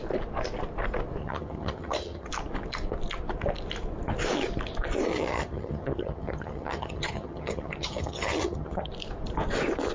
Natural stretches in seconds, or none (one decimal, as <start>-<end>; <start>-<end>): 0.0-1.2; 2.3-5.1; 8.9-9.9